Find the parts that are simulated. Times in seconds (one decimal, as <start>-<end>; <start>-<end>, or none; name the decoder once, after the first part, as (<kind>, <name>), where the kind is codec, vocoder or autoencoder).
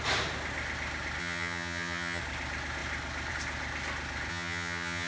1.2-2.2 (vocoder, HiFi-GAN); 4.3-5.1